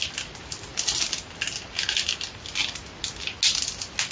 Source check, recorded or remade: recorded